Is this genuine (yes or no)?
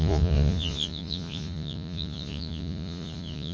no